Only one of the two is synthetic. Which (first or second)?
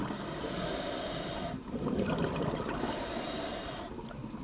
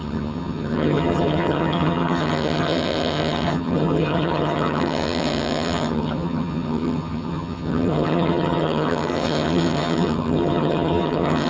second